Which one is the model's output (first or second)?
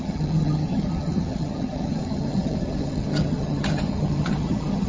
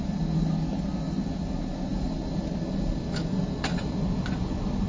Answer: first